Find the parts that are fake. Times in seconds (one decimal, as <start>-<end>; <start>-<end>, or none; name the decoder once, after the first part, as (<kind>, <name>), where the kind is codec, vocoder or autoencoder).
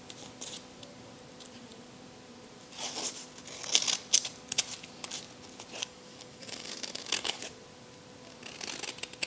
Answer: 5.8-7.4 (codec, DAC)